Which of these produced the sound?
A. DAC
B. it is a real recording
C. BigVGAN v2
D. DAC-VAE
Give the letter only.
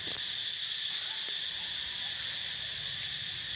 B